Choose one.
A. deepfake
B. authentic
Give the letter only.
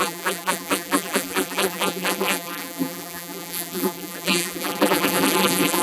A